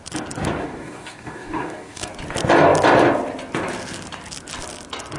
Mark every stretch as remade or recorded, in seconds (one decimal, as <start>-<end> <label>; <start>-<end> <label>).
0.0-0.6 recorded; 0.6-2.1 remade; 2.1-5.2 recorded